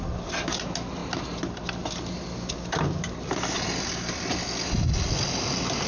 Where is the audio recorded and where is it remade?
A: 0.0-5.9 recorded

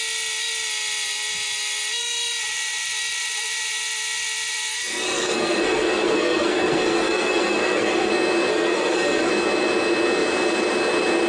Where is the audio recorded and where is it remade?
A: 0.0-4.7 recorded; 4.7-8.1 remade; 8.1-8.5 recorded; 8.5-9.3 remade; 9.3-11.3 recorded

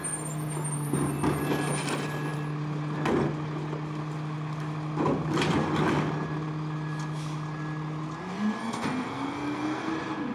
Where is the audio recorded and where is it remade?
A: 0.0-8.6 recorded; 8.6-9.9 remade; 9.9-10.3 recorded